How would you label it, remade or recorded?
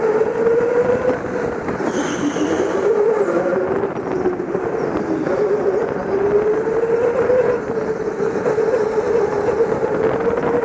recorded